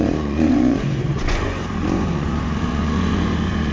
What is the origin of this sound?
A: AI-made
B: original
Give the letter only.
A